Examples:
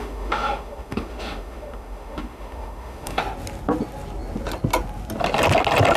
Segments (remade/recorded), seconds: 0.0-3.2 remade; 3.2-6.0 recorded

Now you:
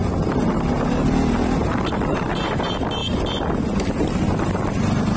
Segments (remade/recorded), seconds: 0.0-5.2 recorded

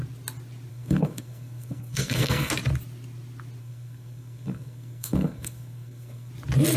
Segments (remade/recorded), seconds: 0.0-0.7 recorded; 0.7-2.5 remade; 2.5-3.6 recorded; 3.6-6.3 remade; 6.3-6.8 recorded

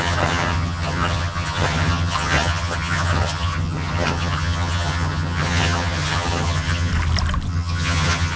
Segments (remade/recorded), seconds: 0.0-6.9 remade; 6.9-7.5 recorded; 7.5-8.4 remade

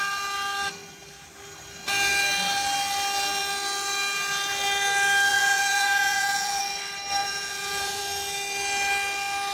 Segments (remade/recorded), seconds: 0.0-5.3 recorded; 5.3-6.6 remade; 6.6-7.2 recorded; 7.2-8.0 remade; 8.0-9.5 recorded